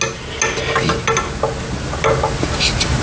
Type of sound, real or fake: real